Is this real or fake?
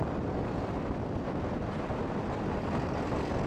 real